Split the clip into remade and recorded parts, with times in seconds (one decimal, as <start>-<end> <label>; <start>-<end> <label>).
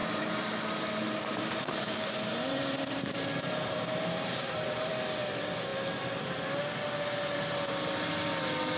0.0-1.4 recorded; 1.4-4.9 remade; 4.9-8.8 recorded